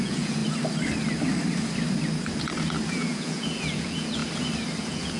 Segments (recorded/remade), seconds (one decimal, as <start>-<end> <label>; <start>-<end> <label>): 0.0-0.4 remade; 0.4-2.9 recorded; 2.9-4.2 remade; 4.2-4.8 recorded; 4.8-5.2 remade

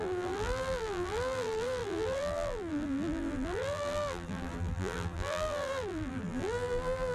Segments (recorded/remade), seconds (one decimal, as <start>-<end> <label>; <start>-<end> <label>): 0.0-7.1 remade

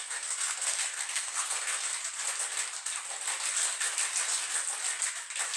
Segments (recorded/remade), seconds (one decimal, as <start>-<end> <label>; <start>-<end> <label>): 0.0-1.9 remade; 1.9-5.6 recorded

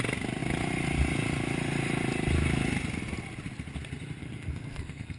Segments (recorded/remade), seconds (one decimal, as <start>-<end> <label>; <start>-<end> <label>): 0.0-4.2 recorded; 4.2-5.2 remade

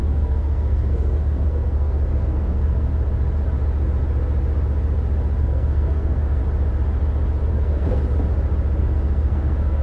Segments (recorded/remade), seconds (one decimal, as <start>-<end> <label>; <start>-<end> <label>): 0.0-2.9 remade; 2.9-5.4 recorded; 5.4-6.4 remade; 6.4-7.5 recorded; 7.5-8.0 remade; 8.0-8.8 recorded; 8.8-9.8 remade

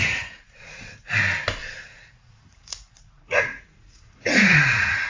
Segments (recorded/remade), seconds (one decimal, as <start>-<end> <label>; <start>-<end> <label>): 0.0-0.8 remade; 0.8-1.6 recorded; 1.6-5.1 remade